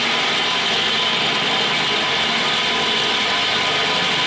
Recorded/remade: recorded